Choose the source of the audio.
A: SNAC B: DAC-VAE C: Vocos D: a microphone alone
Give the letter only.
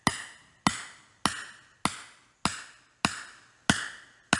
D